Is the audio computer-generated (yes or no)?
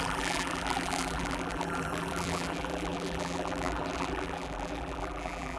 yes